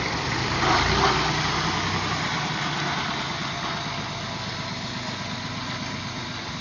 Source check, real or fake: real